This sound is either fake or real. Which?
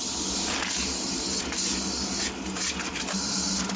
real